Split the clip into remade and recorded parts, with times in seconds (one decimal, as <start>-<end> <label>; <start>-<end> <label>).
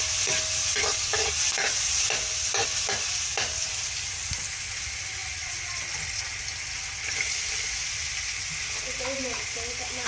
0.0-5.2 recorded; 5.2-6.2 remade; 6.2-7.1 recorded; 7.1-8.0 remade; 8.0-10.1 recorded